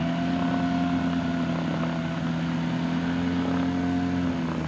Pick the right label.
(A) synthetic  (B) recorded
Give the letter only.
B